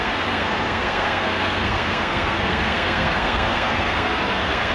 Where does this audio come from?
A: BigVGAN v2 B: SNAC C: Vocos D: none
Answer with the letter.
B